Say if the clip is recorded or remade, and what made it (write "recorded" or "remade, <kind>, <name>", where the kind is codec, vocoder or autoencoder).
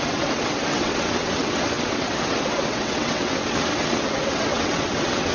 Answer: remade, vocoder, WaveNeXt